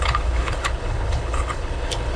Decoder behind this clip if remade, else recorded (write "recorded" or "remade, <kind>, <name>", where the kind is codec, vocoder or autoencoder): remade, codec, HILCodec